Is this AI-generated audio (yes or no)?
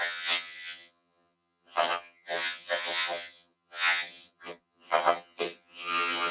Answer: yes